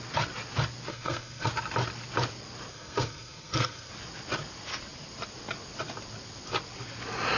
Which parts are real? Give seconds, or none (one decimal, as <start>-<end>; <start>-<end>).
0.0-0.9; 1.5-2.7; 3.9-7.4